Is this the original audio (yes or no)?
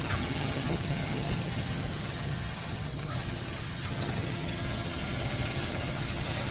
no